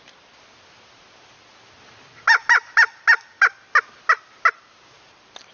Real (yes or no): yes